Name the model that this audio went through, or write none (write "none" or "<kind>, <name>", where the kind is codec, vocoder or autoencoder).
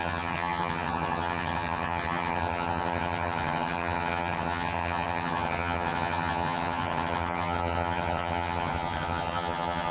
vocoder, HiFi-GAN